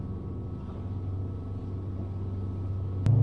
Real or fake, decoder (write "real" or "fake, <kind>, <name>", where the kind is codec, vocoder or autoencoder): real